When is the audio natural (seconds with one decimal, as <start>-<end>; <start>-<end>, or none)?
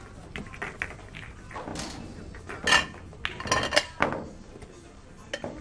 0.0-5.6